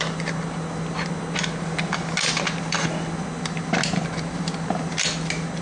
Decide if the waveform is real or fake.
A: real